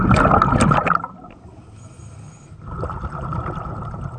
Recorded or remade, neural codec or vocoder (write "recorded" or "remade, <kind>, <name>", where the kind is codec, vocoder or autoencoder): recorded